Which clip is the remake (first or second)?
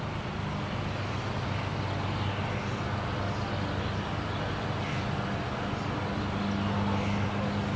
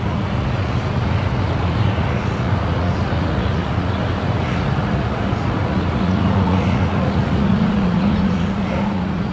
second